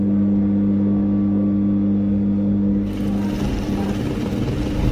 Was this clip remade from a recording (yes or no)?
no